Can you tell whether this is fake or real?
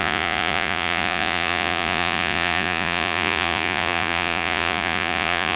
fake